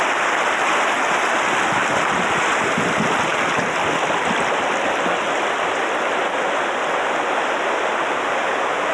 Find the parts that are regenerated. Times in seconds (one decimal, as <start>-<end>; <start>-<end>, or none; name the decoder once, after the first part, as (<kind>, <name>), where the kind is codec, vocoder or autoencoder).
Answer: none